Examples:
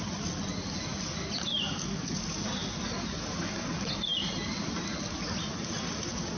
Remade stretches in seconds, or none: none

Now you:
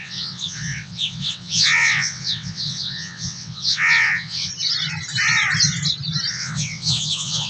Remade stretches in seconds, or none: 0.0-4.5 (vocoder, WaveNeXt); 6.3-7.5

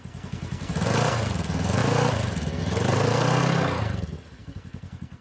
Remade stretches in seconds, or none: 0.0-5.2 (codec, SNAC)

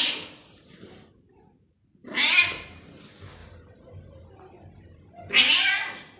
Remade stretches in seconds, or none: none

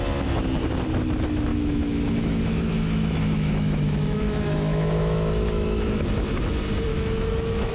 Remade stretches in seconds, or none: 1.5-6.0 (autoencoder, DAC-VAE); 6.9-7.7

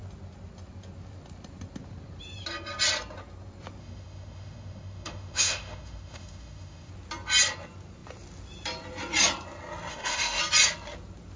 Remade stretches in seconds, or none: 3.8-6.9 (autoencoder, DAC-VAE); 9.9-10.4